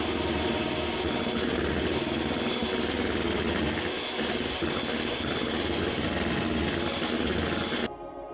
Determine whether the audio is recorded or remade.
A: recorded